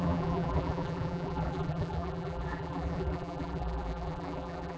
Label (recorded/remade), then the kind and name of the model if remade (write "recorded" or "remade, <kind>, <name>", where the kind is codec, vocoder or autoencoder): remade, vocoder, BigVGAN v2